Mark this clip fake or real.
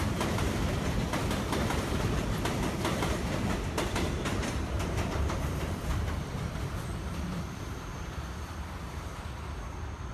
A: fake